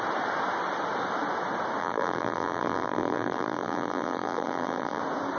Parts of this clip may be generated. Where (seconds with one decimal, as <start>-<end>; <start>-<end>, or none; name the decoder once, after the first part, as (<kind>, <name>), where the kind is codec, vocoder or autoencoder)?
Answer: 1.8-5.0 (vocoder, BigVGAN v2)